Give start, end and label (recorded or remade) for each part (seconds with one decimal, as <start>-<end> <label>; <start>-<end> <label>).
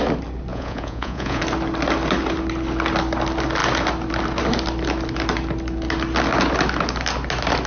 0.0-0.5 recorded; 0.5-1.4 remade; 1.4-7.7 recorded